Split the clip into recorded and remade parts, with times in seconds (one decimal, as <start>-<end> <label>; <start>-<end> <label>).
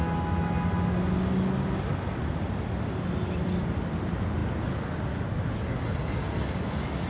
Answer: 0.0-7.1 recorded